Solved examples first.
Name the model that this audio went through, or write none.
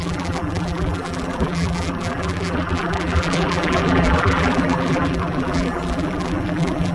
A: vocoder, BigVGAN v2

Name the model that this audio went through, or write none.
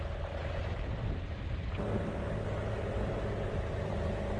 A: none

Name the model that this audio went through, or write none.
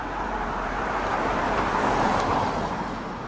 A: vocoder, BigVGAN v2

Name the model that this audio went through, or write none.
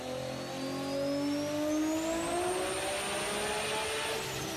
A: none